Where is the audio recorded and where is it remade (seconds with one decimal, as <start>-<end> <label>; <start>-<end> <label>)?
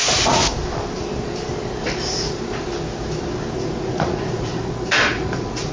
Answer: 0.0-0.4 remade; 0.4-3.8 recorded; 3.8-4.5 remade; 4.5-5.1 recorded; 5.1-5.7 remade